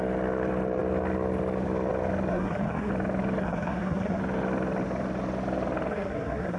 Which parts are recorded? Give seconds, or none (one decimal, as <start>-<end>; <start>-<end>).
0.0-2.3; 2.9-3.4; 4.2-5.9